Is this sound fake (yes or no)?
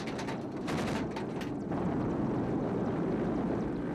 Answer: no